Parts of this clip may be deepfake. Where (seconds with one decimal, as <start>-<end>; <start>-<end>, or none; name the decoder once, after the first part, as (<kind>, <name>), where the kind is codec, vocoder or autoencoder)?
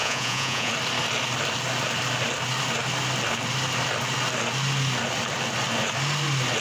0.0-0.7 (vocoder, Vocos)